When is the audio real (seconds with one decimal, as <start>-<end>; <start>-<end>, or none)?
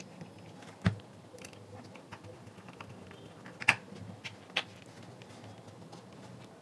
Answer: 0.0-6.6